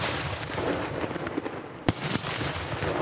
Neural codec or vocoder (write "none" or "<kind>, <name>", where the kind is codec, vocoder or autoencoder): none